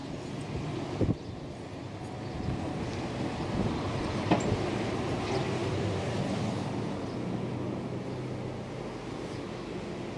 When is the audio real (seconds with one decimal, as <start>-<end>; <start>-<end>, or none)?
0.0-10.2